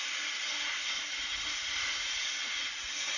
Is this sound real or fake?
real